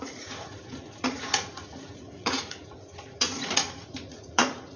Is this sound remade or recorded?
remade